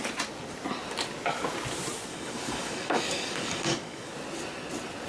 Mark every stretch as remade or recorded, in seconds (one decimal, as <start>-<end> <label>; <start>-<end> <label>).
0.0-2.1 recorded; 2.1-4.1 remade; 4.1-5.1 recorded